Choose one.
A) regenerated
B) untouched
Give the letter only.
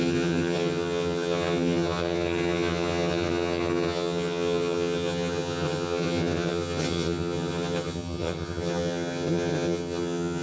A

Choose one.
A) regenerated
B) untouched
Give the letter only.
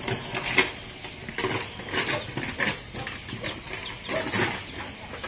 B